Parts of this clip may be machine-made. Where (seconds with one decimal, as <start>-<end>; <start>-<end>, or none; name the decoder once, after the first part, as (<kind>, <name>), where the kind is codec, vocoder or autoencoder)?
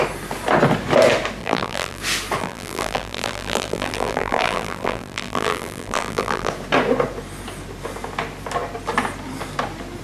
1.4-2.0 (vocoder, BigVGAN v2); 2.4-6.5